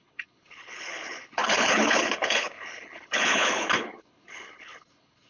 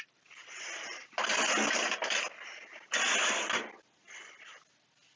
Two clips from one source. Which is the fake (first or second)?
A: first